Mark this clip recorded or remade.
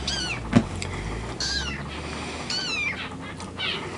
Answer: recorded